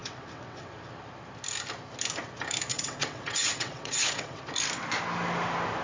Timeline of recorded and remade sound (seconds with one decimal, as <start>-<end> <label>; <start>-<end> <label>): 0.0-0.7 remade; 0.7-2.7 recorded; 2.7-4.5 remade; 4.5-5.8 recorded